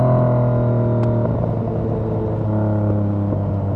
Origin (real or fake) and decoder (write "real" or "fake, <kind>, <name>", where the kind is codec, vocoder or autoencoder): real